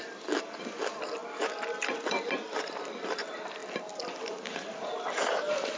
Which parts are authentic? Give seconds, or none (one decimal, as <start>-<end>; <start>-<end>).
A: 1.2-1.8